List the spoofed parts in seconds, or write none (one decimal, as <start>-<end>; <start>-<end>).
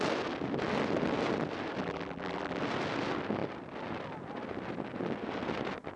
1.8-2.6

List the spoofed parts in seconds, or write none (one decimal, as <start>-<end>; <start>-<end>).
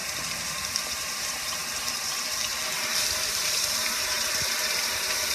0.0-2.5; 3.3-5.3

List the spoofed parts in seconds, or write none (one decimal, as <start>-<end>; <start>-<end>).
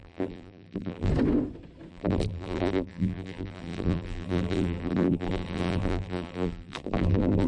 0.0-1.1; 1.9-7.5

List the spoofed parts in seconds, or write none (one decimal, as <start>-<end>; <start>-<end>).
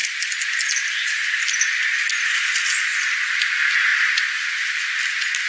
0.0-0.6; 2.9-3.5; 3.9-4.8